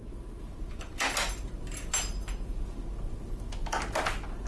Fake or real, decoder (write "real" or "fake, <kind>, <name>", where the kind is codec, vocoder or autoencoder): real